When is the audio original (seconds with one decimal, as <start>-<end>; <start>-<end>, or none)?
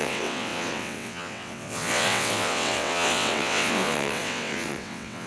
none